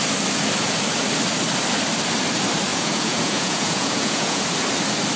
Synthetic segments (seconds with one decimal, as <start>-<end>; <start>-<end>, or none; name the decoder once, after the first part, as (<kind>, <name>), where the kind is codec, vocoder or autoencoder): 2.7-4.4 (vocoder, Vocos)